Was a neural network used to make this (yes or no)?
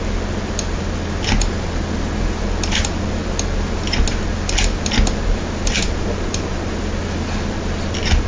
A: no